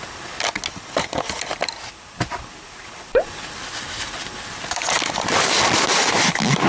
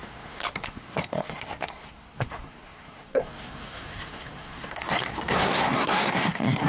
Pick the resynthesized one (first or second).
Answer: second